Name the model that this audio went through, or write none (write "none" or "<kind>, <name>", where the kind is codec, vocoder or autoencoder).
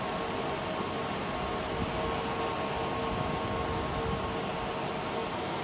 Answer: none